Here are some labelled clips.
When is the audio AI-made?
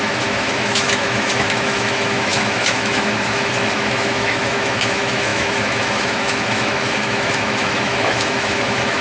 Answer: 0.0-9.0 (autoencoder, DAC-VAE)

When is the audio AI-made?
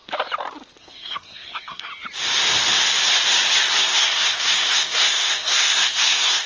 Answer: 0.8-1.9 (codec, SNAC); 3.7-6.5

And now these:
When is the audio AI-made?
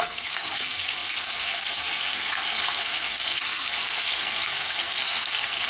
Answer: 0.0-5.7 (codec, SNAC)